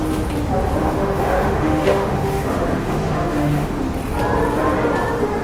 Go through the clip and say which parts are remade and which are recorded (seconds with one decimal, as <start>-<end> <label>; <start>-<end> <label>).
0.0-0.8 recorded; 0.8-3.8 remade; 3.8-5.4 recorded